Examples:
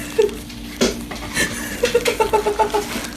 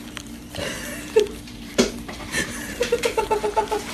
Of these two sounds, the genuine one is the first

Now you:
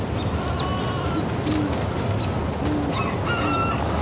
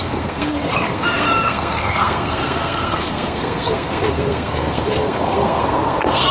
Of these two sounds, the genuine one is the first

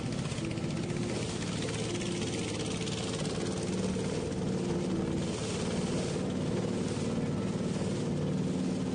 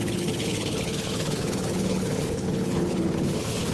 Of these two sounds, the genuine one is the first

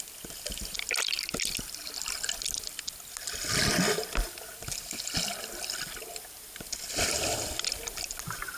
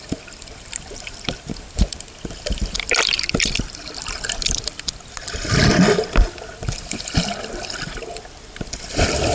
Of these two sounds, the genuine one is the first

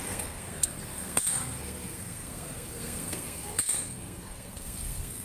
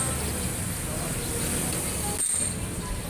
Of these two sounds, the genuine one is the second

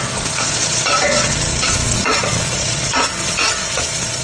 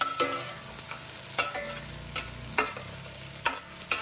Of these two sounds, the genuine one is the second